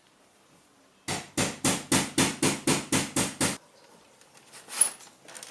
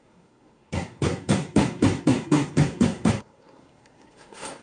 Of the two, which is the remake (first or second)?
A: second